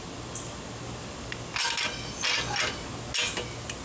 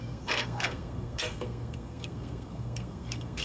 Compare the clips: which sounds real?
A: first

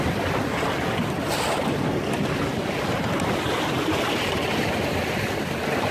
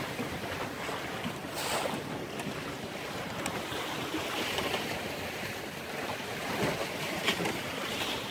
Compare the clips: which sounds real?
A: first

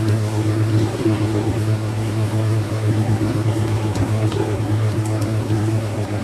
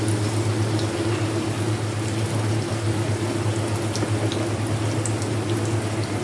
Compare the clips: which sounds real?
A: second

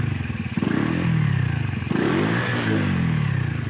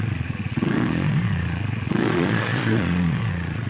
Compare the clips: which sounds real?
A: first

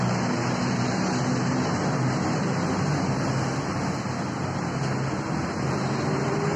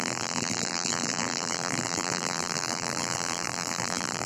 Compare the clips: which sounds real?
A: first